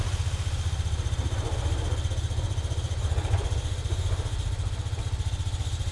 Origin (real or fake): real